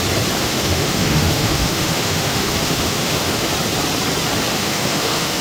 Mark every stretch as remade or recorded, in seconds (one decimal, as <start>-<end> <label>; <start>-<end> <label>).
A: 0.0-0.4 recorded; 0.4-3.5 remade; 3.5-4.5 recorded; 4.5-5.4 remade